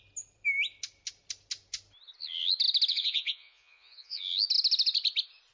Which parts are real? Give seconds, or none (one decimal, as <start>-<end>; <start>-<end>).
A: 0.0-2.9; 4.2-5.5